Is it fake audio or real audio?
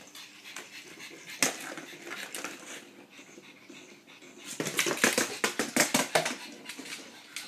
real